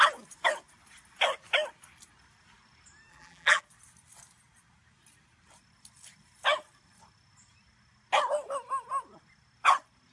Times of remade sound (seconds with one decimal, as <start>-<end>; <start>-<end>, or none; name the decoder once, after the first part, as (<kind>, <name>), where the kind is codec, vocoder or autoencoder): 3.1-3.6 (vocoder, BigVGAN v2)